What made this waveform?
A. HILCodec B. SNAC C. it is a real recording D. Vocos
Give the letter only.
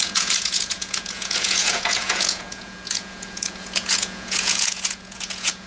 D